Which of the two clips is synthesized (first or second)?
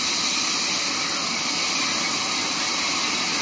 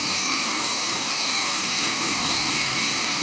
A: second